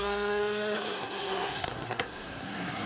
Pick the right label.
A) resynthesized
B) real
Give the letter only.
A